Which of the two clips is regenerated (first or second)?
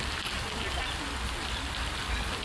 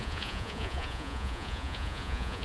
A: second